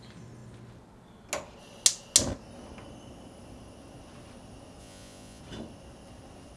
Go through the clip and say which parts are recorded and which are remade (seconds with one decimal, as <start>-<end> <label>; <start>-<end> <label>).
0.0-4.8 recorded; 4.8-5.4 remade; 5.4-6.6 recorded